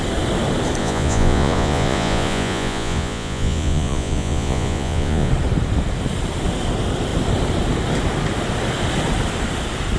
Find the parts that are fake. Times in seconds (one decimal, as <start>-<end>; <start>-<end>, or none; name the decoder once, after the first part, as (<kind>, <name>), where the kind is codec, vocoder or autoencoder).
0.8-5.3 (vocoder, Vocos)